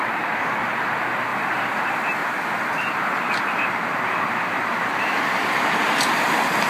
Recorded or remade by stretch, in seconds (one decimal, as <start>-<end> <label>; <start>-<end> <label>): 0.0-1.3 recorded; 1.3-1.8 remade; 1.8-2.2 recorded; 2.2-6.2 remade; 6.2-6.7 recorded